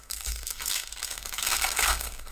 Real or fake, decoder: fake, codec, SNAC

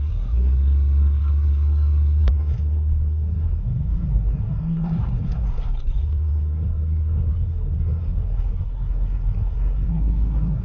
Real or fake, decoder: fake, codec, SNAC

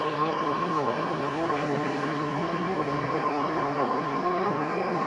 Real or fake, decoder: fake, codec, SNAC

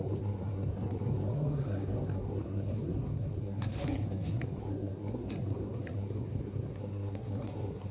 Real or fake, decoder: fake, codec, SNAC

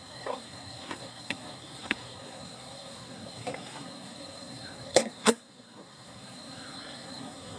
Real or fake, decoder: fake, codec, SNAC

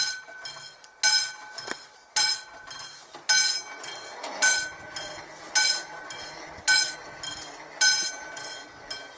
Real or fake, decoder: real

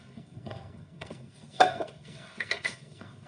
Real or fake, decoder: fake, codec, SNAC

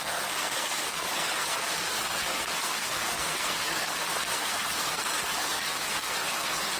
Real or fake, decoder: fake, codec, SNAC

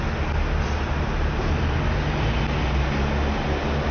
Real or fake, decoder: real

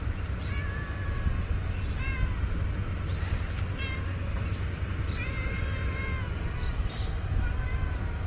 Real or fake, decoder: real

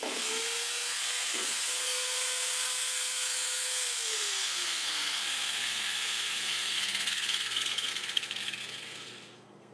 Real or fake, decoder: fake, codec, SNAC